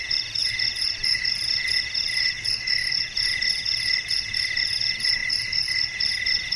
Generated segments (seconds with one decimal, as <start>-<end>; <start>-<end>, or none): none